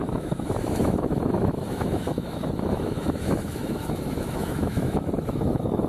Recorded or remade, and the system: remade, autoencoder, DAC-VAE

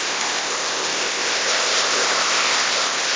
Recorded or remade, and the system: remade, codec, ZipCodec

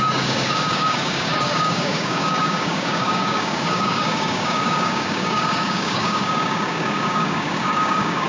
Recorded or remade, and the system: remade, codec, DAC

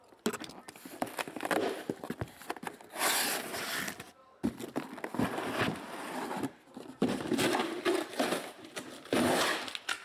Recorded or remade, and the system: recorded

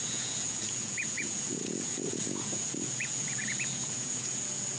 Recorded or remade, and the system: remade, vocoder, Vocos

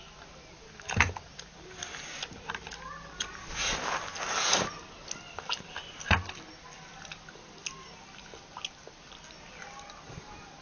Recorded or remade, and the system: recorded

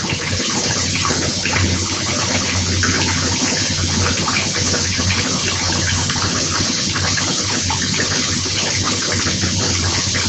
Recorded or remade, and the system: remade, codec, HILCodec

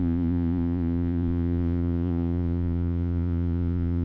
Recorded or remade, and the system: remade, vocoder, Vocos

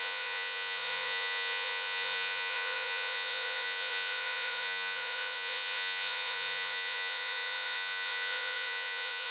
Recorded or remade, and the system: remade, vocoder, Vocos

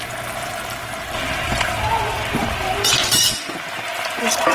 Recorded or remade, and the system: recorded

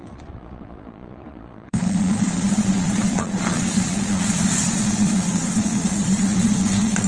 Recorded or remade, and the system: remade, vocoder, Vocos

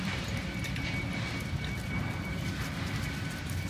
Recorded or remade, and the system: remade, vocoder, BigVGAN v2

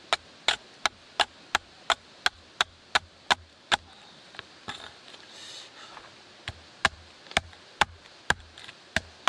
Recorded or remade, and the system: recorded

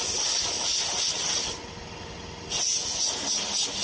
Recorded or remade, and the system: recorded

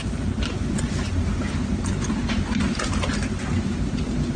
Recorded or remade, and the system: recorded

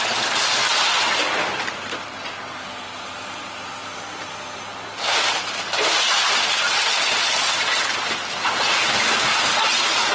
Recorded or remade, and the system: recorded